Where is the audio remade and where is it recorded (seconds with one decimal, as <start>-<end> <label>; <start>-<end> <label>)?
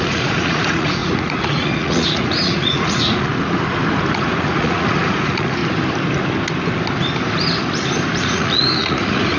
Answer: 0.0-3.3 remade; 3.3-4.1 recorded; 4.1-5.6 remade; 5.6-8.2 recorded; 8.2-9.4 remade